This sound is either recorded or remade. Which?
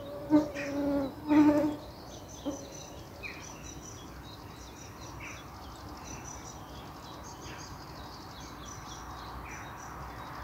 recorded